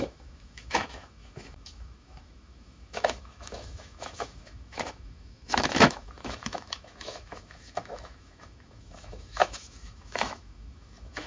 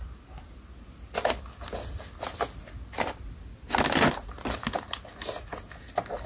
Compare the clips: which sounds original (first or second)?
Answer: second